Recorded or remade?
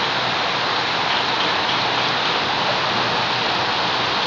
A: recorded